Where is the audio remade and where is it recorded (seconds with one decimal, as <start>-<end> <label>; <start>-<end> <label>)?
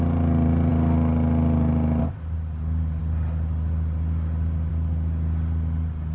0.0-6.1 recorded